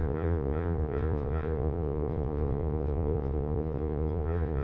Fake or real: fake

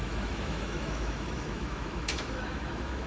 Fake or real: fake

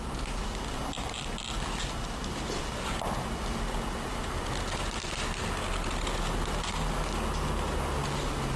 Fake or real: real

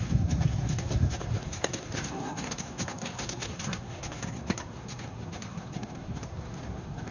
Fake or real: fake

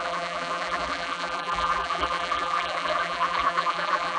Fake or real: fake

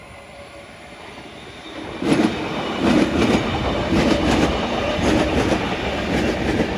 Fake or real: real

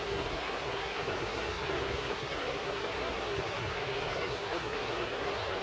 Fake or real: fake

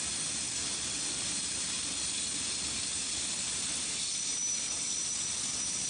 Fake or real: fake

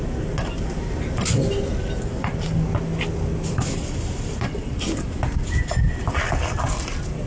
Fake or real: real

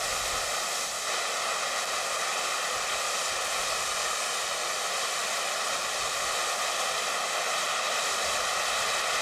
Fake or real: real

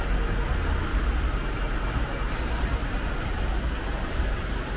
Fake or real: real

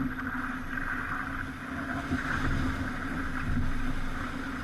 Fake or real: real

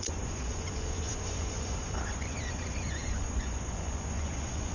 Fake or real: fake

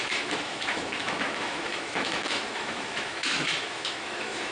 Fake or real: fake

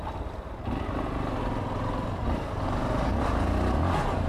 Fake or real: real